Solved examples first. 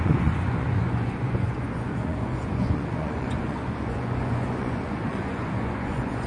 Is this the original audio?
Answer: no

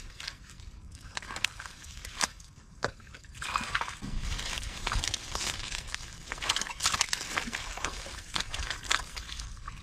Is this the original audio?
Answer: no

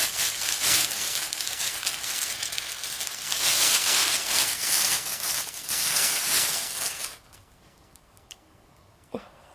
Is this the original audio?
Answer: no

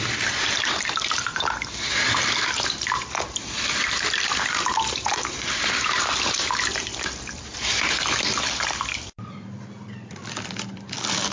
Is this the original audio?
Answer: no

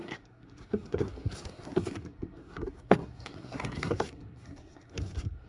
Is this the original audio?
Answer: no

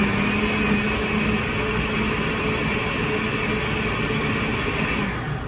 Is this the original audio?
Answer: yes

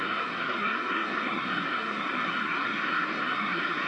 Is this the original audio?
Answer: no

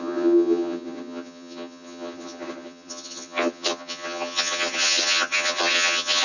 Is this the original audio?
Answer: no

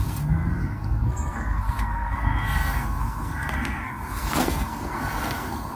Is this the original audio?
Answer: no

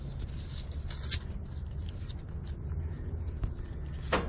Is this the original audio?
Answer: yes